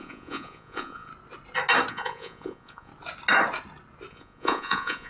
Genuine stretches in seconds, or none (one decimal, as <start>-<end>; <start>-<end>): 1.1-1.9; 2.9-4.1